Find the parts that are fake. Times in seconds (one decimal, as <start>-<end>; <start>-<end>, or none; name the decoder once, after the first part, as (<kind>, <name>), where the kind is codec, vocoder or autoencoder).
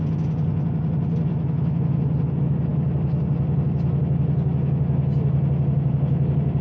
1.3-2.0 (autoencoder, DAC-VAE)